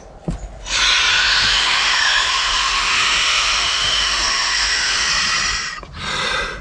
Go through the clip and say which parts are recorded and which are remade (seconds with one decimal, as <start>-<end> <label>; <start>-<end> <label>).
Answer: 0.0-1.1 recorded; 1.1-5.1 remade; 5.1-6.6 recorded